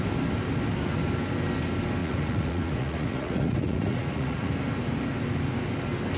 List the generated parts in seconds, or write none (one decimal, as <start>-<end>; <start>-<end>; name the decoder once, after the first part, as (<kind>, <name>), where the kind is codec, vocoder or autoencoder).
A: 2.0-4.5 (vocoder, Vocos)